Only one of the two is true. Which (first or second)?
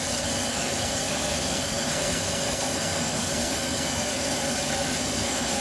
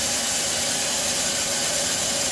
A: second